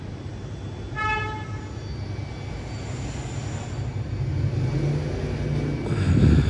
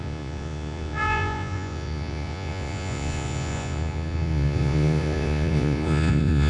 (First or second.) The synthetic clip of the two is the second